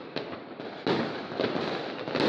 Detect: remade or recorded recorded